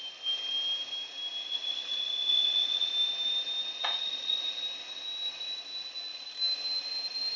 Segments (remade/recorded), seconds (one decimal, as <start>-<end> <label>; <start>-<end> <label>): 0.0-1.4 recorded; 1.4-2.9 remade; 2.9-3.8 recorded; 3.8-4.6 remade; 4.6-7.4 recorded